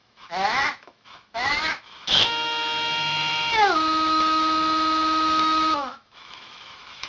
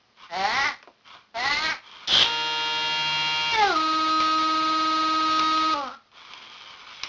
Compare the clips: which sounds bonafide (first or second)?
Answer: second